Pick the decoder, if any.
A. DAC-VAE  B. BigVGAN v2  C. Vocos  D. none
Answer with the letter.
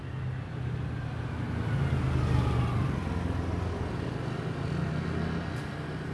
D